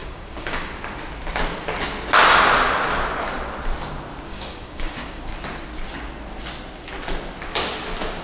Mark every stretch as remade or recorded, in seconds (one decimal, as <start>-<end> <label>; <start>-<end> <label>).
0.0-0.7 remade; 0.7-4.3 recorded; 4.3-5.2 remade; 5.2-8.2 recorded

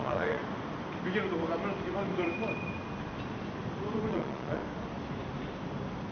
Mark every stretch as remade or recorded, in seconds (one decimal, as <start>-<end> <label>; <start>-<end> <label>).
0.0-0.4 remade; 0.4-4.1 recorded; 4.1-4.6 remade; 4.6-6.1 recorded